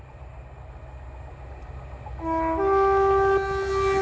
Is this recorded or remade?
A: recorded